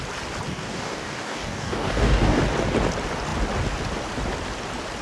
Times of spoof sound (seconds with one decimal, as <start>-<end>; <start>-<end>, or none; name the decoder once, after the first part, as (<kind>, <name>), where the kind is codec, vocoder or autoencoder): 0.5-2.4 (codec, DAC)